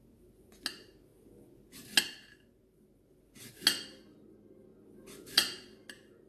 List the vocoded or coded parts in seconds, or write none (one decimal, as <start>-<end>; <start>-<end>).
none